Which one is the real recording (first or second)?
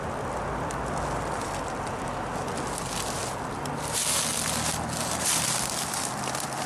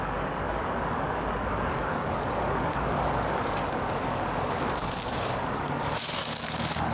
first